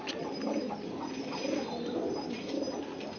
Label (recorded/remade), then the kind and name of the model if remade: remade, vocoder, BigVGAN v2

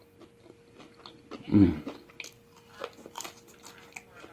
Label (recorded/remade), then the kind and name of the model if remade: recorded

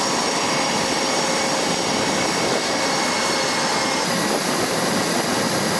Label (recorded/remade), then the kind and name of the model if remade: recorded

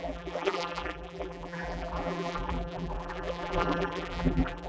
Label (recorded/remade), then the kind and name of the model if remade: remade, vocoder, BigVGAN v2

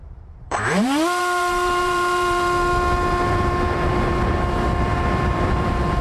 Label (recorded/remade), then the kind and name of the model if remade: remade, vocoder, BigVGAN v2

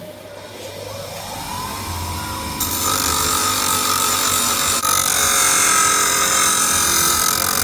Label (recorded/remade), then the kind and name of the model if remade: recorded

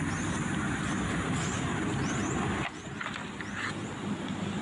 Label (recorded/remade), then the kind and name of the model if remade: recorded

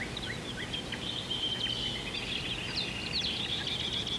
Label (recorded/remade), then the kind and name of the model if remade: recorded